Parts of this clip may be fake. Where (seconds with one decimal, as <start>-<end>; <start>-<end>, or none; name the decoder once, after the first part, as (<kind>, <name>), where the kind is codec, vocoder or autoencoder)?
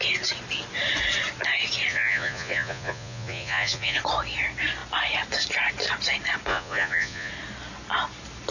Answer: 1.9-4.0 (vocoder, Vocos); 6.5-7.3